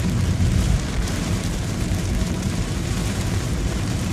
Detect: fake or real fake